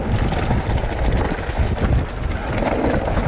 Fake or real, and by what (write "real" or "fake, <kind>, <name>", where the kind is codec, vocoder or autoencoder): real